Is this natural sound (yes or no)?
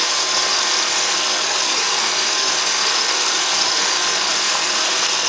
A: no